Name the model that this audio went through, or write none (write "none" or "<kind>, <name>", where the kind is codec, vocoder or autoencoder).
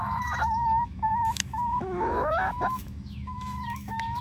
autoencoder, DAC-VAE